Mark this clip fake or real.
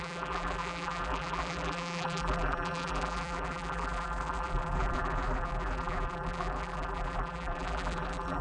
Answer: fake